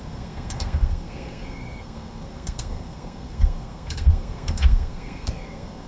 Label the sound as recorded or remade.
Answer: remade